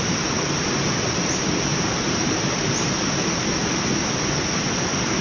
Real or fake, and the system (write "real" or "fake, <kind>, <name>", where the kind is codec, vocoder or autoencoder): real